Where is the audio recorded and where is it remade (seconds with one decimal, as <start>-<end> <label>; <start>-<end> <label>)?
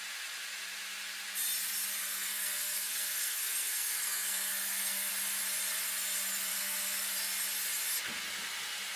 0.0-2.0 recorded; 2.0-5.1 remade; 5.1-6.5 recorded; 6.5-7.1 remade; 7.1-9.0 recorded